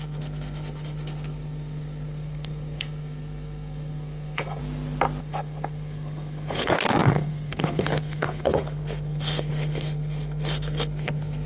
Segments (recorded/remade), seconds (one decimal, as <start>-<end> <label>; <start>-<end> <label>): 0.0-4.6 remade; 4.6-5.2 recorded; 5.2-11.5 remade